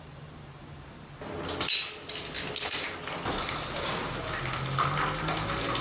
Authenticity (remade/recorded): recorded